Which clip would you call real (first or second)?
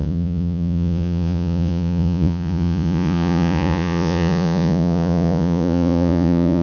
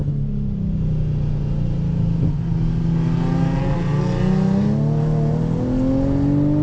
second